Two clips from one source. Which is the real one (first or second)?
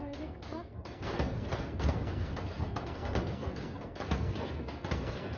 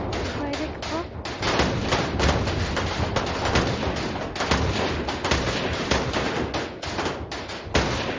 second